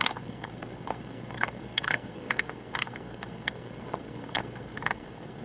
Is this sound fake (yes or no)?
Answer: yes